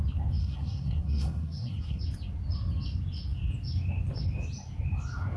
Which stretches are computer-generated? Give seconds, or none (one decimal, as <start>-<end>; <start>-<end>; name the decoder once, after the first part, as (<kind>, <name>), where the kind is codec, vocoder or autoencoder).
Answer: 0.4-2.0 (codec, SNAC)